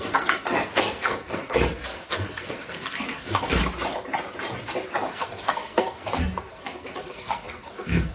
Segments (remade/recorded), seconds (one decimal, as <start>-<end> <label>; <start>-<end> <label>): 0.0-3.6 remade; 3.6-5.1 recorded; 5.1-8.1 remade